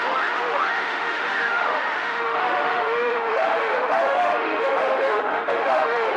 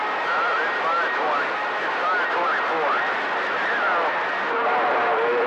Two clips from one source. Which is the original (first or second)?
second